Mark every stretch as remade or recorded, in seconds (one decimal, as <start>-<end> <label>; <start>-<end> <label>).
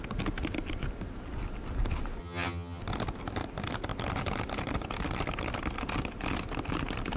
0.0-2.2 recorded; 2.2-2.8 remade; 2.8-7.2 recorded